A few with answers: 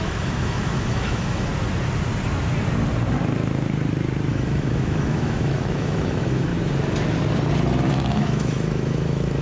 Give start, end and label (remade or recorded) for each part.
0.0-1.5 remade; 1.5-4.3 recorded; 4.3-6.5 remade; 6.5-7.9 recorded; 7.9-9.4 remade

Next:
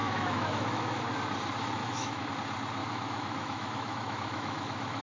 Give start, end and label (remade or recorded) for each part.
0.0-1.0 remade; 1.0-1.8 recorded; 1.8-2.3 remade; 2.3-2.8 recorded; 2.8-5.0 remade

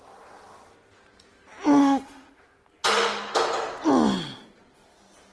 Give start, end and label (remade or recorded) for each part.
0.0-1.8 recorded; 1.8-2.4 remade; 2.4-5.3 recorded

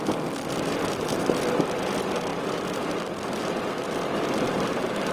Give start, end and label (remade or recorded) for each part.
0.0-5.1 recorded

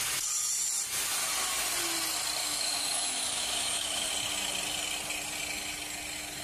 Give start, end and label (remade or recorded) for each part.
0.0-2.4 recorded; 2.4-4.1 remade; 4.1-6.4 recorded

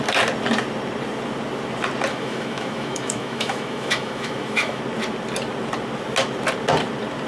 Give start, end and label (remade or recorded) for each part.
0.0-2.1 recorded; 2.1-4.8 remade; 4.8-7.3 recorded

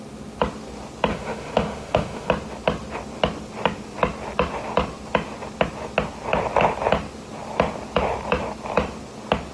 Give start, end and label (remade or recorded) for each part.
0.0-1.1 recorded; 1.1-2.3 remade; 2.3-9.5 recorded

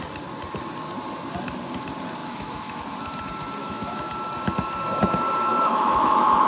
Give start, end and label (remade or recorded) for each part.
0.0-2.2 recorded; 2.2-2.8 remade; 2.8-3.6 recorded; 3.6-4.1 remade; 4.1-5.5 recorded; 5.5-6.5 remade